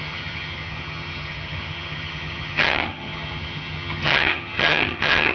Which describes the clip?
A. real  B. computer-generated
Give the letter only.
B